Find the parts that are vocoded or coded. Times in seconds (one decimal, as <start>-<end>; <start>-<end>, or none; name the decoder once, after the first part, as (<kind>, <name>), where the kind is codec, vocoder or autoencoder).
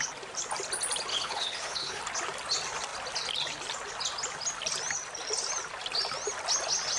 1.1-2.0 (codec, HILCodec)